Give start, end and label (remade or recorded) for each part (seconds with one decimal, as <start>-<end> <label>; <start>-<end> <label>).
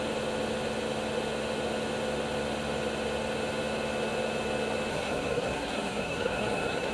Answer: 0.0-4.9 recorded; 4.9-6.9 remade